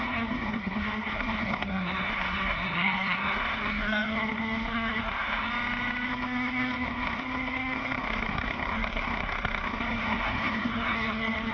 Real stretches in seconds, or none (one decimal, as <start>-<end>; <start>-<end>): 5.5-6.1